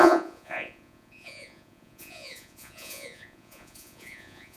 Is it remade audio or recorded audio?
remade